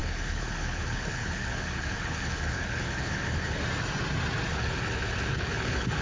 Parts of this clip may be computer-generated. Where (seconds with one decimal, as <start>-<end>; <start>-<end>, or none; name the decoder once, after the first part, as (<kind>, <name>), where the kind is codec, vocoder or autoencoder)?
0.0-3.6 (codec, HILCodec); 4.5-6.0